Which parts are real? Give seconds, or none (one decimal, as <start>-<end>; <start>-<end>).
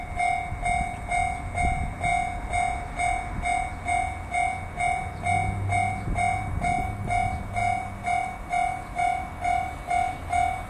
0.0-10.7